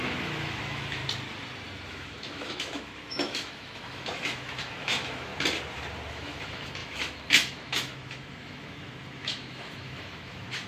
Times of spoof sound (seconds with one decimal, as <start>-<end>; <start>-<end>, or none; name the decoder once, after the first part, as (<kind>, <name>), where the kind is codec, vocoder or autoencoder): 0.0-1.0 (autoencoder, DAC-VAE); 1.9-5.3; 6.1-10.7